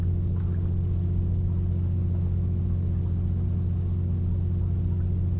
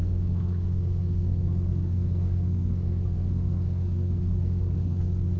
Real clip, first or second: first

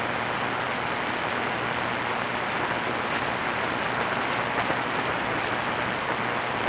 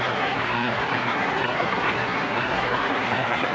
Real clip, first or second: first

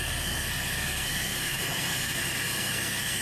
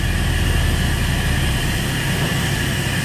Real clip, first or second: second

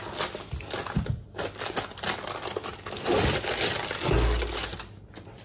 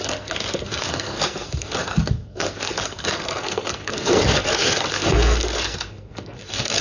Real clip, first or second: first